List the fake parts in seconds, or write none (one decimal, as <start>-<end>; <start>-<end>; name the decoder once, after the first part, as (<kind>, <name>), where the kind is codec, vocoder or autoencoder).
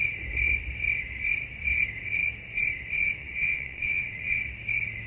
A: 3.2-4.4 (vocoder, WaveNeXt)